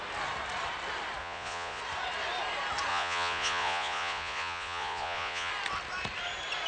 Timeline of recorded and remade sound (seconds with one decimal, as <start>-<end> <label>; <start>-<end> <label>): 0.0-1.2 recorded; 1.2-1.8 remade; 1.8-2.9 recorded; 2.9-5.5 remade; 5.5-6.7 recorded